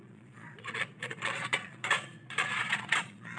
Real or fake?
fake